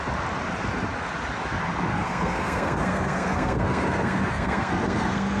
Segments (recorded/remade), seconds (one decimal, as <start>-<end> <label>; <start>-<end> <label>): 0.0-1.9 recorded; 1.9-5.4 remade